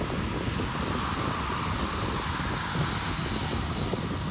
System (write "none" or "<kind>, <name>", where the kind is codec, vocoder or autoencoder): none